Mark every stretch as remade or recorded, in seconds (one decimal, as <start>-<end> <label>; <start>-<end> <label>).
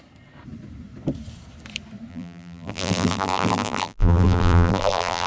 0.0-2.1 recorded; 2.1-5.3 remade